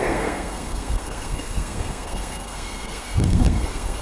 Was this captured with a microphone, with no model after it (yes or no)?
no